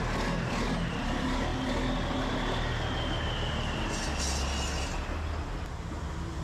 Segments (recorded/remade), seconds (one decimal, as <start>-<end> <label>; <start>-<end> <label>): 0.0-6.4 recorded